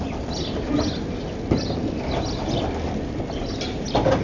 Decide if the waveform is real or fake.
real